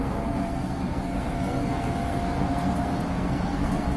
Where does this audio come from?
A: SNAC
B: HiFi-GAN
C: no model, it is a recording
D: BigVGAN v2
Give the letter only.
A